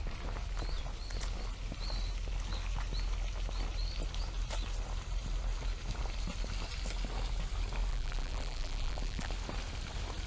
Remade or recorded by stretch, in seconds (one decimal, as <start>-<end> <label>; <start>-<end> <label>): 0.0-7.9 recorded; 7.9-9.3 remade; 9.3-10.3 recorded